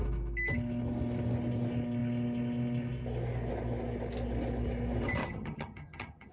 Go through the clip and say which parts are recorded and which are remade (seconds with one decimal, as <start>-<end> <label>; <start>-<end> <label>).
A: 0.0-5.2 recorded; 5.2-6.3 remade